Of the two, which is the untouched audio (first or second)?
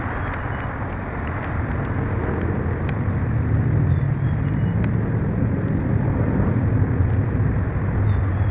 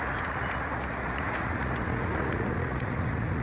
first